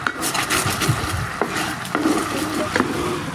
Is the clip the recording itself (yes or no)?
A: yes